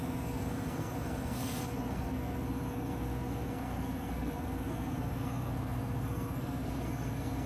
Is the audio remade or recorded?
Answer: remade